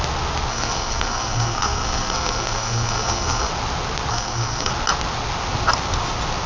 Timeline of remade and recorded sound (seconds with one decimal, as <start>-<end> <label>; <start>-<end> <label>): 0.0-0.5 recorded; 0.5-3.5 remade; 3.5-4.1 recorded; 4.1-4.7 remade; 4.7-6.5 recorded